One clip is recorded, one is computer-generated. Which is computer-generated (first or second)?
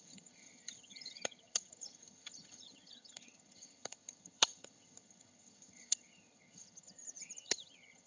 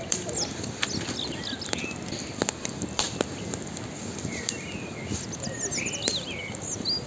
first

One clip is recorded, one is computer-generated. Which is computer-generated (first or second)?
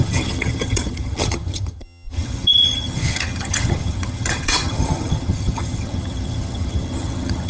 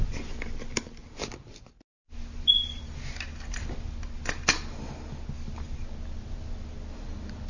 first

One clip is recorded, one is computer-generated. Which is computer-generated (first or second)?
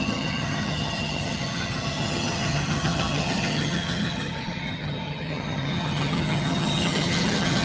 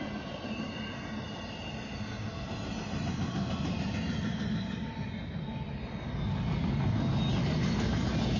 first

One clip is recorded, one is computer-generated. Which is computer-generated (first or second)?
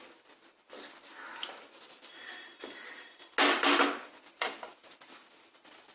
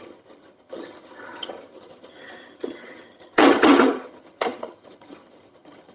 second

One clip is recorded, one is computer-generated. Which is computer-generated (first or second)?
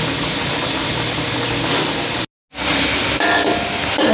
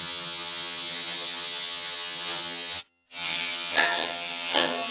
second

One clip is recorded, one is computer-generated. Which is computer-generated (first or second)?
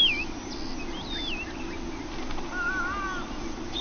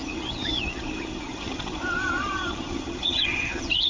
second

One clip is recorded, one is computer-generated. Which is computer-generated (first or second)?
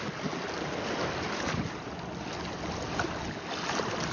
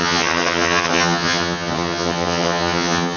second